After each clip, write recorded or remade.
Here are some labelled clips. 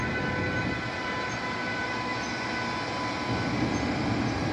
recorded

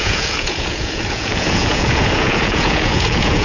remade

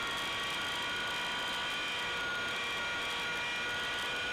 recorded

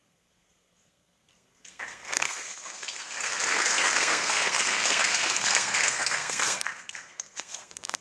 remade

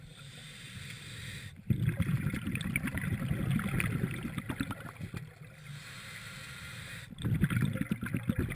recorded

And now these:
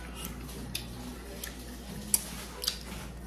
recorded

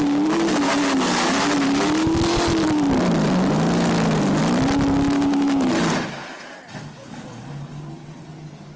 recorded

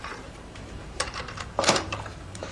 remade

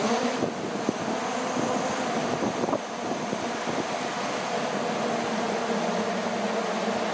recorded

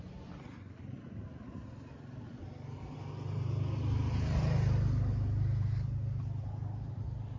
recorded